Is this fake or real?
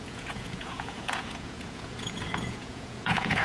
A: fake